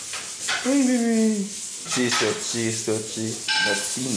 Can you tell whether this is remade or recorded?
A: recorded